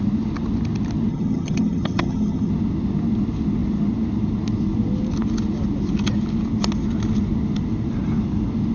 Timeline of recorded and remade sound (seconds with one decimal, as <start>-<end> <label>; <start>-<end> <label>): 0.0-1.1 recorded; 1.1-2.5 remade; 2.5-8.7 recorded

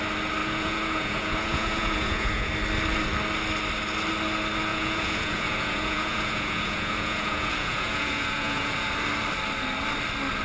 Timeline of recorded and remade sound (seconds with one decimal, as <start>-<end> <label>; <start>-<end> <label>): 0.0-0.4 recorded; 0.4-2.5 remade; 2.5-4.7 recorded; 4.7-8.9 remade; 8.9-10.4 recorded

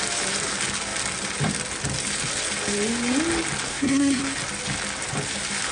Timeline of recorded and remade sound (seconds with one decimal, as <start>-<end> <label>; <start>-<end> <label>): 0.0-3.7 recorded; 3.7-4.2 remade; 4.2-5.7 recorded